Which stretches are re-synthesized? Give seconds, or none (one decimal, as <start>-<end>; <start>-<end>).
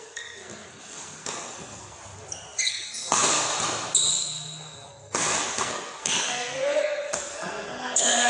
0.0-2.0; 2.7-3.5; 4.1-8.3